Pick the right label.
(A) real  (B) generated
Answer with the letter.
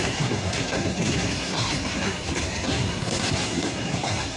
B